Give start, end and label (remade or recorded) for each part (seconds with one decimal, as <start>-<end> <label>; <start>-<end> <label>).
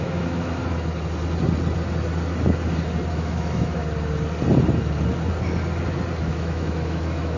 0.0-0.6 remade; 0.6-3.1 recorded; 3.1-3.8 remade; 3.8-6.2 recorded; 6.2-7.4 remade